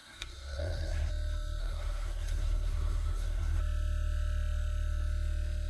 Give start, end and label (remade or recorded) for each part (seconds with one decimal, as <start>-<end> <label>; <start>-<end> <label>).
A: 0.0-1.1 remade; 1.1-1.6 recorded; 1.6-3.6 remade; 3.6-5.7 recorded

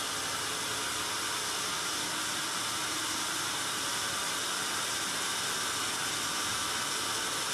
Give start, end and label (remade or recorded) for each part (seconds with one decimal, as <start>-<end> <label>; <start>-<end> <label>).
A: 0.0-7.5 recorded

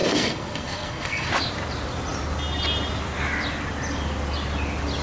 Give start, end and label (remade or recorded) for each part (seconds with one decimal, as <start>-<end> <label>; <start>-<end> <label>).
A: 0.0-1.3 remade; 1.3-5.0 recorded

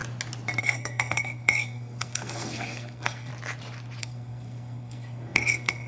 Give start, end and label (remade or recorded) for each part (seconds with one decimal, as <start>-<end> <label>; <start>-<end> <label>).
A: 0.0-0.6 recorded; 0.6-3.3 remade; 3.3-4.0 recorded; 4.0-5.9 remade